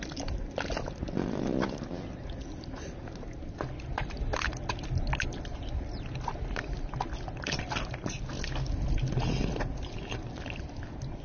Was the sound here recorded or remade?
recorded